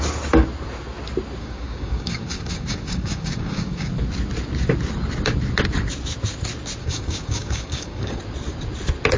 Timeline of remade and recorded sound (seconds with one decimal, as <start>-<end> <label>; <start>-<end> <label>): 0.0-1.4 recorded; 1.4-3.9 remade; 3.9-6.8 recorded; 6.8-8.2 remade; 8.2-9.2 recorded